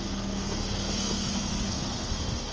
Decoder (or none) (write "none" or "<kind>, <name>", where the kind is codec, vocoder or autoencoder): codec, SNAC